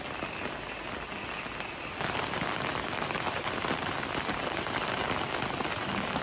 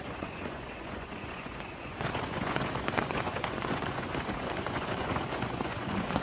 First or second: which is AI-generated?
second